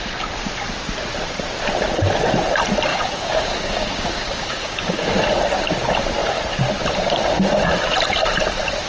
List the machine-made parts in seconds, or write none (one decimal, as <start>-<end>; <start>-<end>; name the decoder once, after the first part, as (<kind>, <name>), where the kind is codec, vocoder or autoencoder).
2.9-5.2 (codec, DAC)